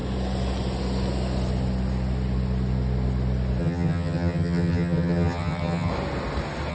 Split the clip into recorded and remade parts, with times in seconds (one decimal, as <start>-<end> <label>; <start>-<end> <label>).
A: 0.0-3.6 recorded; 3.6-5.9 remade; 5.9-6.7 recorded